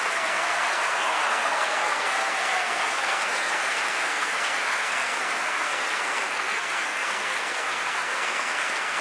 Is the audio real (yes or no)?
no